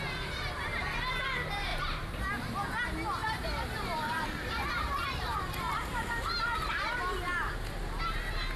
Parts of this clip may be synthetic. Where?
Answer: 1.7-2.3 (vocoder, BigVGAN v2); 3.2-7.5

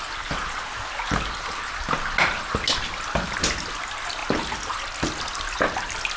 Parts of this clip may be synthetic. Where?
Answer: none

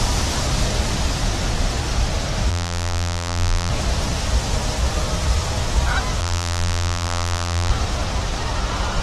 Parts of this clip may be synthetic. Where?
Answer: 2.5-3.7 (vocoder, BigVGAN v2); 6.2-7.7

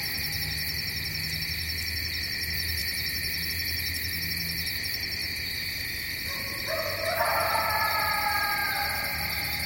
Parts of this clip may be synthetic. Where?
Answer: 2.8-3.5 (vocoder, BigVGAN v2); 8.6-9.2

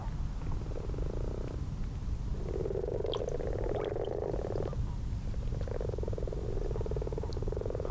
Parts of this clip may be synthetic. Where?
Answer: 4.6-7.9 (vocoder, BigVGAN v2)

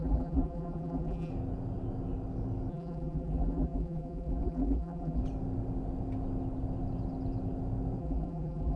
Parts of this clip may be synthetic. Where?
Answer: 0.0-1.3 (vocoder, BigVGAN v2); 2.7-5.2; 8.0-8.8

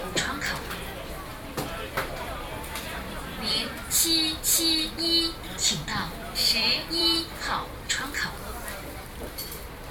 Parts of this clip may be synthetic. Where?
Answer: 1.3-4.0 (vocoder, BigVGAN v2); 5.9-8.3